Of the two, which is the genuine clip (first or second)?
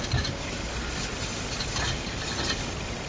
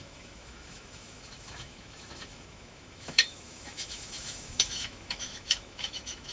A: first